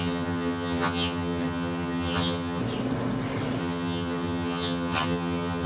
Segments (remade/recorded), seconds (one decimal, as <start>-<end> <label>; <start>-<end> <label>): 0.0-2.6 remade; 2.6-3.6 recorded; 3.6-5.7 remade